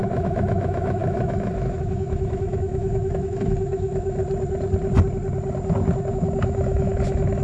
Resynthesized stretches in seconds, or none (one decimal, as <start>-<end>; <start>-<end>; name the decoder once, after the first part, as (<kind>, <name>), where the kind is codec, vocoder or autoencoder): 0.0-4.2 (autoencoder, DAC-VAE); 6.1-7.4